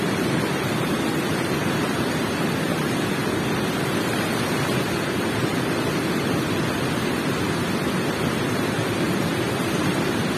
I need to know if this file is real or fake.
fake